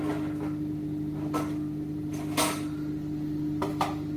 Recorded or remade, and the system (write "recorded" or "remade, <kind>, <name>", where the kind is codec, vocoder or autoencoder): recorded